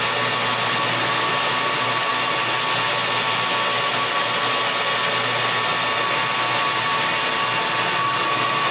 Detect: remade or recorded recorded